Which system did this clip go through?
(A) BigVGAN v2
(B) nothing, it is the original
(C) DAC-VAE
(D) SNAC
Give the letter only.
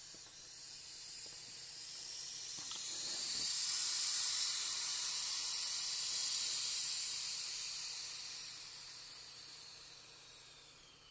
A